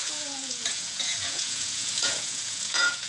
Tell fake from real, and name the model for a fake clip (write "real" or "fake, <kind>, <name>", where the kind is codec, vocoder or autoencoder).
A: fake, vocoder, Vocos